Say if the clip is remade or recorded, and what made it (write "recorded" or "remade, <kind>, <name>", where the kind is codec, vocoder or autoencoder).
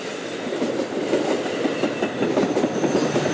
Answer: recorded